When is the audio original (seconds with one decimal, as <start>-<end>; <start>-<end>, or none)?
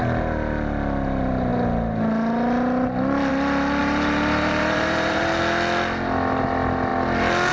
0.0-3.8; 5.4-7.5